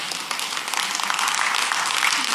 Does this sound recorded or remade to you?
recorded